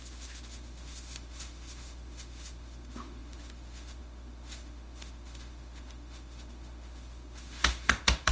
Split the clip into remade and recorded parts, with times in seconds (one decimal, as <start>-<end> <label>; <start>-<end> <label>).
0.0-8.3 remade